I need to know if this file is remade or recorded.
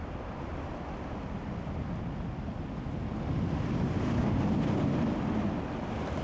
recorded